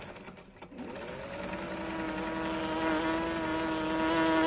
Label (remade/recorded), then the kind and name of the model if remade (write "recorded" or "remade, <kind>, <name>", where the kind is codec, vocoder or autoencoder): recorded